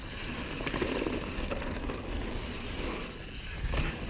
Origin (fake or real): real